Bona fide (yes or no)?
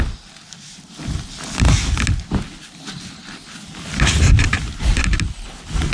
yes